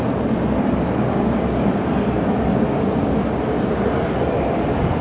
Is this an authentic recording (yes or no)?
yes